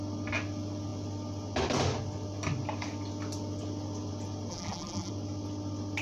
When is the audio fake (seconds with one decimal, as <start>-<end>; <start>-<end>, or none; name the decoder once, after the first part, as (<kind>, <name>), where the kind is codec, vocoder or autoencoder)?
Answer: 4.5-5.1 (vocoder, BigVGAN v2)